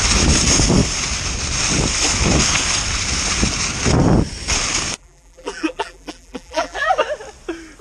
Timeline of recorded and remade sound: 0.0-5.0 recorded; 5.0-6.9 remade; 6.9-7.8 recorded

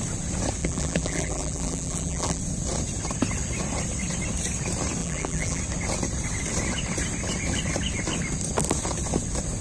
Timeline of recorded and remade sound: 0.0-0.6 recorded; 0.6-2.4 remade; 2.4-5.0 recorded; 5.0-5.6 remade; 5.6-9.6 recorded

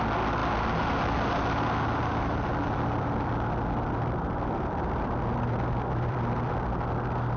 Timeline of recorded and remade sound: 0.0-2.1 recorded; 2.1-6.5 remade; 6.5-7.4 recorded